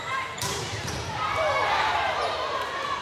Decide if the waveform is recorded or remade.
remade